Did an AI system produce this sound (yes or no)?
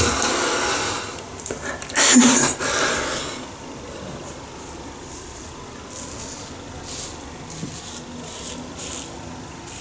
no